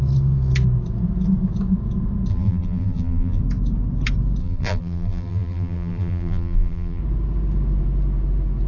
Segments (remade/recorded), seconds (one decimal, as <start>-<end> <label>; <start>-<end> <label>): 0.0-2.3 recorded; 2.3-3.4 remade; 3.4-4.4 recorded; 4.4-7.0 remade; 7.0-8.7 recorded